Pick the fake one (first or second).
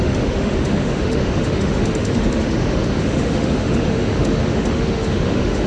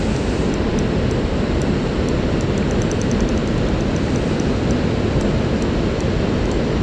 first